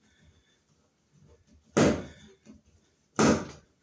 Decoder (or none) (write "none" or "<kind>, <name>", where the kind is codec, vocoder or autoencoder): none